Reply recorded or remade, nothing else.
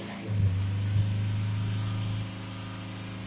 recorded